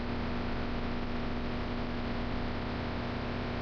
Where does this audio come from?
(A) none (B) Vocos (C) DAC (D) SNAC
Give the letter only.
A